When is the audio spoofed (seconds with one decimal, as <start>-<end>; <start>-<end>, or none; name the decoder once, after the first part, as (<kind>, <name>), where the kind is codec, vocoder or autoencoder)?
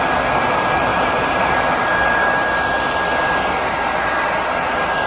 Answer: 0.9-1.5 (vocoder, BigVGAN v2)